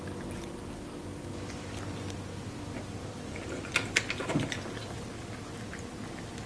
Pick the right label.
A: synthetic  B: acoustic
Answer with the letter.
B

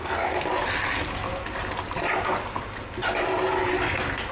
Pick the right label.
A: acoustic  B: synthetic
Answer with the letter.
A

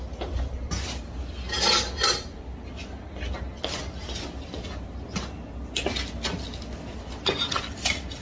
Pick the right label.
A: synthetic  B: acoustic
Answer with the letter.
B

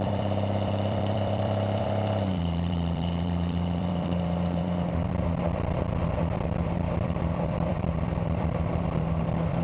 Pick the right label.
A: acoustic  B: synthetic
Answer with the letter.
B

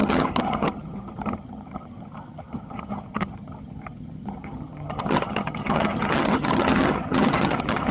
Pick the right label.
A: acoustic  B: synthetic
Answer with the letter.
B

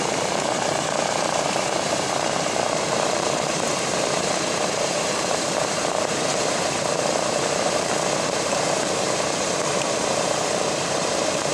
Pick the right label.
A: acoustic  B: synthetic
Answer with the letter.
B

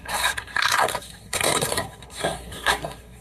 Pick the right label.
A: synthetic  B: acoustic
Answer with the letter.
A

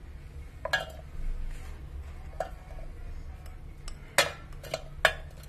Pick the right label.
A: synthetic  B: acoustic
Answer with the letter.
B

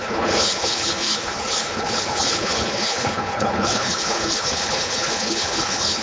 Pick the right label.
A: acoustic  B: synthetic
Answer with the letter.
B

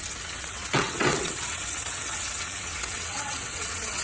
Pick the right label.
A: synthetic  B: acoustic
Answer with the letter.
A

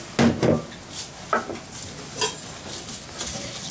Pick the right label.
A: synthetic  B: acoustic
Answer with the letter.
B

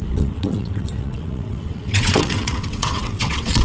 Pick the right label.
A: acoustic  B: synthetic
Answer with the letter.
B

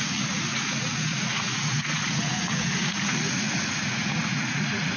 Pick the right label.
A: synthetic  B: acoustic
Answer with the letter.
A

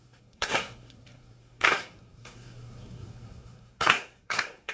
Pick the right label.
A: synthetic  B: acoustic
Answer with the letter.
A